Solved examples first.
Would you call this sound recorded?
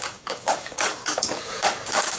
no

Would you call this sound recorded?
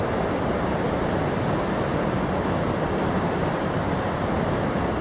yes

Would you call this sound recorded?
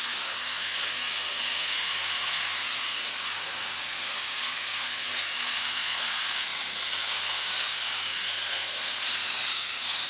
no